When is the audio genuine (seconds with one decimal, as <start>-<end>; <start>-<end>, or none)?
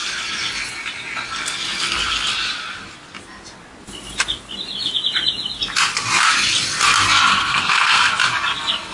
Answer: 0.0-7.3; 8.1-8.9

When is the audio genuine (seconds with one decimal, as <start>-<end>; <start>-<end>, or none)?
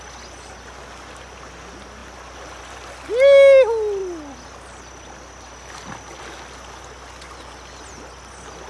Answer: 0.0-8.7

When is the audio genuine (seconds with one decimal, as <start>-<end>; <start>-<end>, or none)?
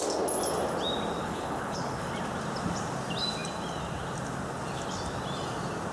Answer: 0.0-1.2; 2.1-5.9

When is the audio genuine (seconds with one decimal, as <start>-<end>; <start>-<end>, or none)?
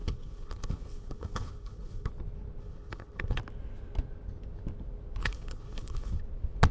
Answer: 2.1-2.6; 3.4-5.2; 6.2-6.7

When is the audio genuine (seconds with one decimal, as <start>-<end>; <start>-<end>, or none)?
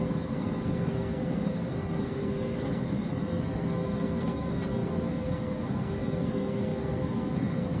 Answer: none